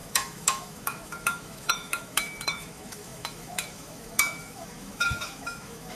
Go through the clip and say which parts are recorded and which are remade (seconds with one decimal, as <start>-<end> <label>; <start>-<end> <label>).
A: 0.0-6.0 remade